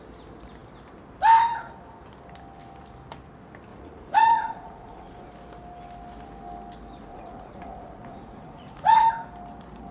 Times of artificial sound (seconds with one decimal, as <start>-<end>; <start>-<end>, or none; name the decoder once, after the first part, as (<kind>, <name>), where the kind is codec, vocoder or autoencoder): 3.7-5.3 (vocoder, Vocos); 7.1-9.1